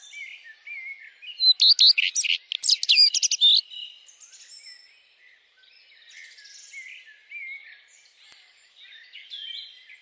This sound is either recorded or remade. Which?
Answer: recorded